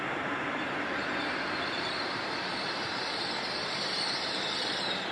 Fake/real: fake